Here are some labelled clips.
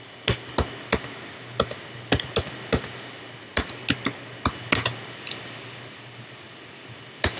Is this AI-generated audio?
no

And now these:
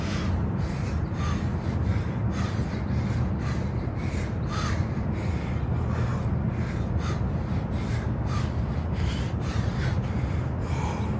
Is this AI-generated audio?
no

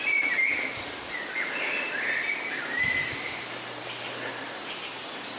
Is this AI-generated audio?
no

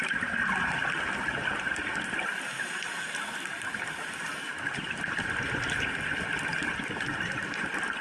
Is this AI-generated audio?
no